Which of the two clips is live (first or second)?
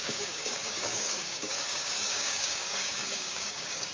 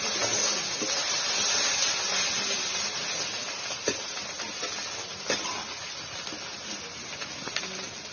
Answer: second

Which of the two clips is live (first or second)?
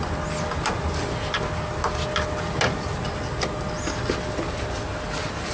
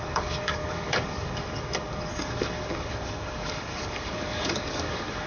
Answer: first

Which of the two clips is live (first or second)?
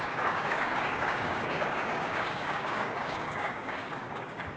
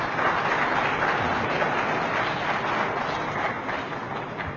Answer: second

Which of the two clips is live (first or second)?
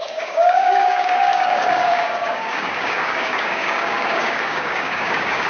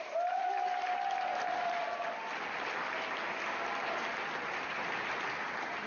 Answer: second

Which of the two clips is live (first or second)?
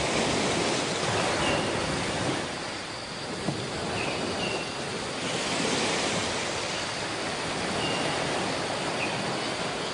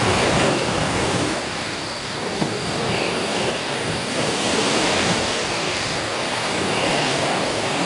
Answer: first